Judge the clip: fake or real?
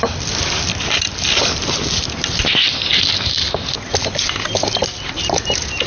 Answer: real